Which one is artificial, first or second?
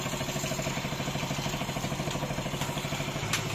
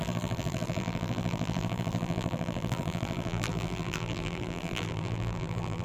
second